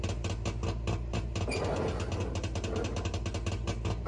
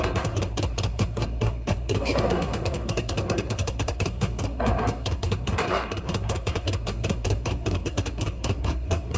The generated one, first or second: second